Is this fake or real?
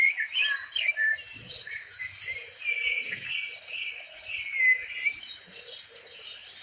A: real